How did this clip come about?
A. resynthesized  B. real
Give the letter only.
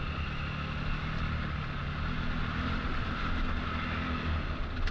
B